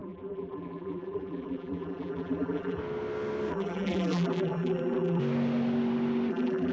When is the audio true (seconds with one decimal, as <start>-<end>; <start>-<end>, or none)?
2.8-3.5; 5.2-6.3